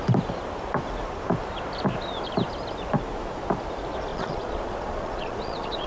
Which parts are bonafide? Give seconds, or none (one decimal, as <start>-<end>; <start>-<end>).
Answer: 0.0-4.1